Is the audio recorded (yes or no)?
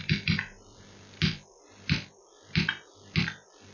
yes